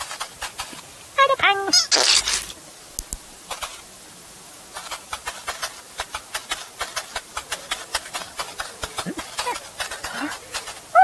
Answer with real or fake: real